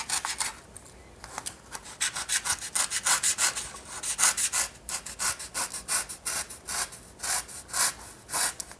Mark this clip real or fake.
real